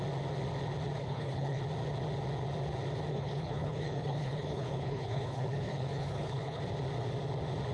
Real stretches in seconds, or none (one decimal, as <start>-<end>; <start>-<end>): 0.0-1.0; 1.6-3.1; 6.6-7.7